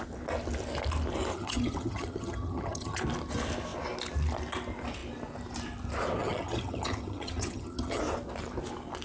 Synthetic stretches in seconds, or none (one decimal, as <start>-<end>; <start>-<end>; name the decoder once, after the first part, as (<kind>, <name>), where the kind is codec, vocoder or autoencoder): 1.3-3.0 (vocoder, HiFi-GAN); 6.2-8.0